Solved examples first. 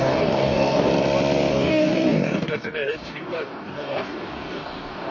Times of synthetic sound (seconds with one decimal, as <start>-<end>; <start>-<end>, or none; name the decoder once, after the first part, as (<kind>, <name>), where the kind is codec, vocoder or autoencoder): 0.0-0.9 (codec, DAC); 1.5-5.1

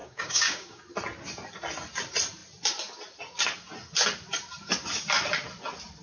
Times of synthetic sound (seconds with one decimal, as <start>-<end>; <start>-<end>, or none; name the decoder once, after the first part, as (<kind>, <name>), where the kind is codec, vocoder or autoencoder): 0.0-0.8 (codec, DAC)

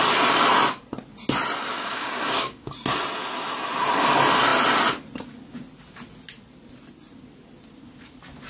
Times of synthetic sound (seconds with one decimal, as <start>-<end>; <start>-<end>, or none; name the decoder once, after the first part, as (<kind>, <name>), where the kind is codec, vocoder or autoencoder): 1.7-2.7 (codec, DAC)